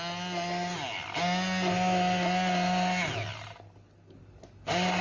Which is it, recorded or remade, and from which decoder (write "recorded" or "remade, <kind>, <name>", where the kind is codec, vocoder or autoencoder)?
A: recorded